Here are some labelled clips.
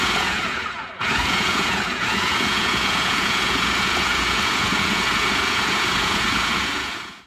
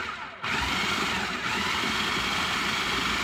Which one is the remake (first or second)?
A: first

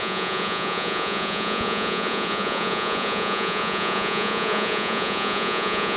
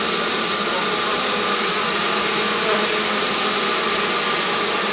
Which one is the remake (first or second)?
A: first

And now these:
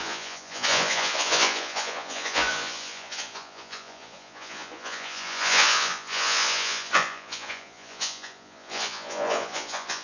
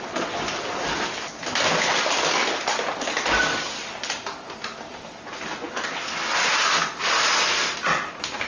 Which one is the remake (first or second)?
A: first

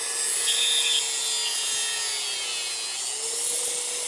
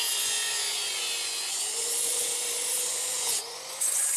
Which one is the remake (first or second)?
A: second